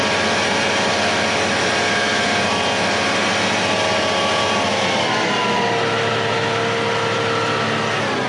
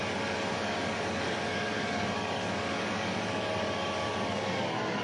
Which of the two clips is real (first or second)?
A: first